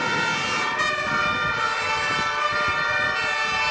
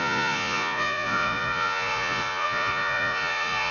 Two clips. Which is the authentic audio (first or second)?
first